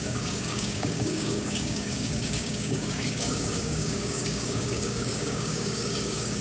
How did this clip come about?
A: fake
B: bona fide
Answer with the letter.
A